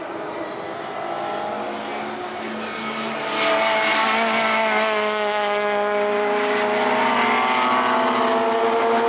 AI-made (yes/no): no